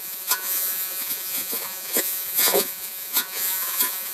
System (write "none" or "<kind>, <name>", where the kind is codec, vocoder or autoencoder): vocoder, Vocos